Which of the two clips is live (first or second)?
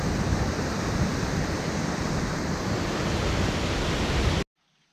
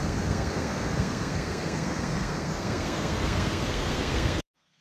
first